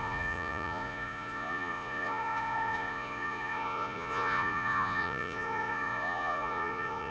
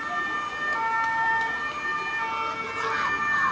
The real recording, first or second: second